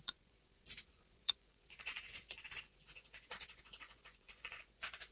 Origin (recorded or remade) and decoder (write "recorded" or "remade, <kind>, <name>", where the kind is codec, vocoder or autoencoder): remade, vocoder, Vocos